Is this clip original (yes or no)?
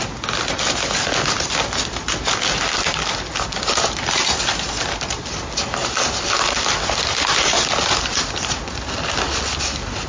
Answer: yes